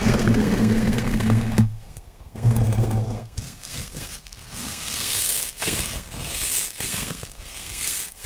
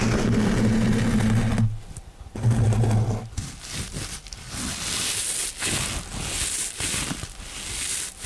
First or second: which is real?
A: second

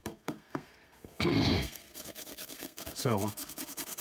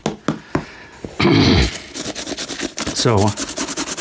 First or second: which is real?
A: second